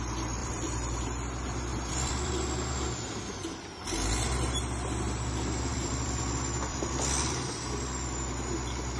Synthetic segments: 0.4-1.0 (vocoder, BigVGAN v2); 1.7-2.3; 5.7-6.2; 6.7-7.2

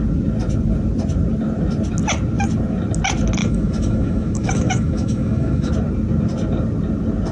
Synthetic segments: 3.4-5.7 (autoencoder, DAC-VAE)

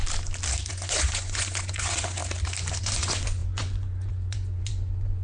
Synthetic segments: 0.7-2.2 (vocoder, Vocos); 2.8-5.2

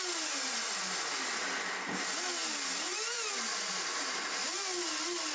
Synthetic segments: none